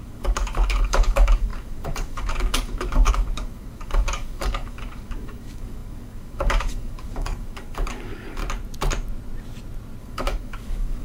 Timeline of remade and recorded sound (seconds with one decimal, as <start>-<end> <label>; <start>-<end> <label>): 0.0-8.4 remade; 8.4-10.0 recorded; 10.0-11.0 remade